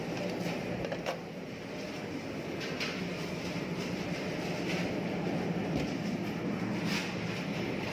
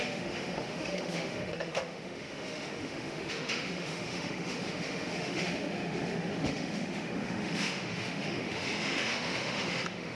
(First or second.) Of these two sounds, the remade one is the second